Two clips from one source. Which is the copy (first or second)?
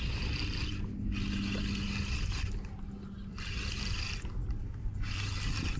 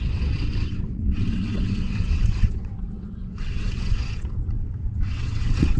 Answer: second